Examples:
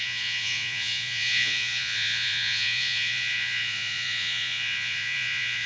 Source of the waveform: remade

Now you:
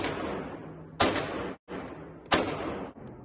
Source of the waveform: recorded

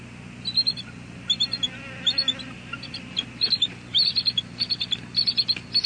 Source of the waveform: recorded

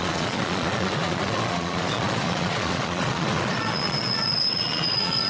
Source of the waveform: remade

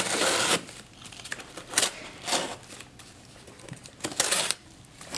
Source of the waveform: remade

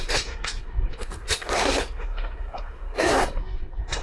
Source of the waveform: remade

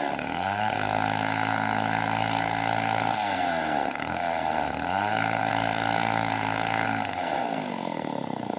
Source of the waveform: remade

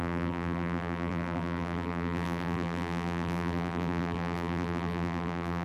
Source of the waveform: remade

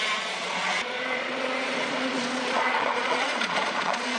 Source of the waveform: remade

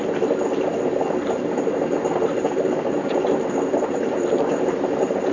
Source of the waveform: remade